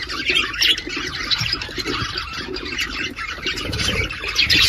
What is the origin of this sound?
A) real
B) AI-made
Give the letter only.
B